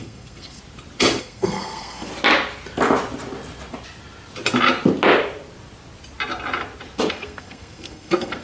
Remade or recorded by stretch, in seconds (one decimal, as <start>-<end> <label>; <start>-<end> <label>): 0.0-0.6 remade; 0.6-1.2 recorded; 1.2-2.1 remade; 2.1-7.1 recorded; 7.1-8.4 remade